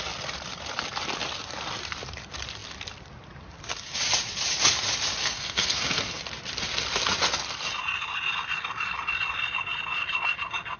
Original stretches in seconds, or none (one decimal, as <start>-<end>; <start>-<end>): 0.0-5.2; 6.2-10.8